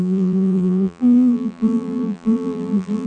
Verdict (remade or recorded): remade